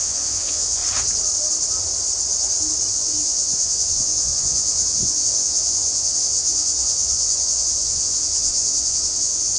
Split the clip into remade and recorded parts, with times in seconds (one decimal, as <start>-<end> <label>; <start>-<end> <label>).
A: 0.0-0.8 remade; 0.8-2.9 recorded; 2.9-9.6 remade